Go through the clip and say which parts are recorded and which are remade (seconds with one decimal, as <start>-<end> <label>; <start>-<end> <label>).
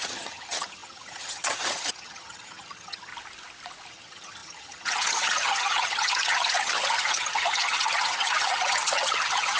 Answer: 0.0-3.1 remade; 3.1-3.9 recorded; 3.9-9.6 remade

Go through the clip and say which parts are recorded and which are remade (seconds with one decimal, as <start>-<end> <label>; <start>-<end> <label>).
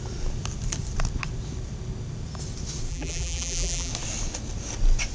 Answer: 0.0-2.9 recorded; 2.9-3.9 remade; 3.9-5.1 recorded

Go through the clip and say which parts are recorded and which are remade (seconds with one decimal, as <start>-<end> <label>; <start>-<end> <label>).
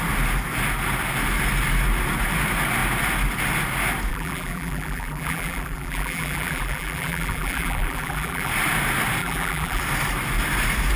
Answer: 0.0-4.1 recorded; 4.1-8.5 remade; 8.5-9.2 recorded; 9.2-9.8 remade; 9.8-11.0 recorded